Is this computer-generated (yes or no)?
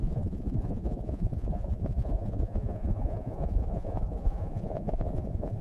yes